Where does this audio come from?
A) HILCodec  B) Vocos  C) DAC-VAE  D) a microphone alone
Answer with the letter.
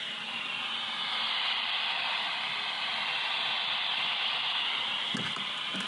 D